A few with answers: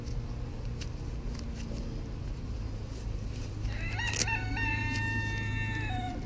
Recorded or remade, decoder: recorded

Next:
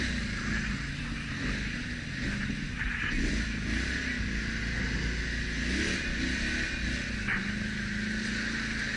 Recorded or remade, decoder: recorded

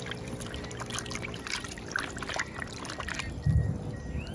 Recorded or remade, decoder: remade, vocoder, BigVGAN v2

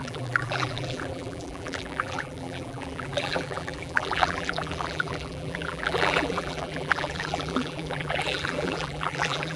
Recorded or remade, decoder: remade, vocoder, BigVGAN v2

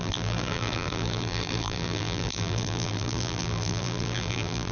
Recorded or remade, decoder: remade, vocoder, BigVGAN v2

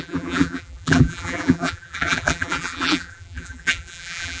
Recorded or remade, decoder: remade, vocoder, BigVGAN v2